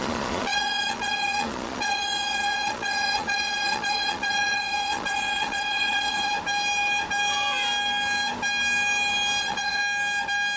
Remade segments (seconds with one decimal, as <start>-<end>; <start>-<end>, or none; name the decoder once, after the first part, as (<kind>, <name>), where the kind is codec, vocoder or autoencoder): 0.0-6.3 (vocoder, Vocos); 9.4-9.8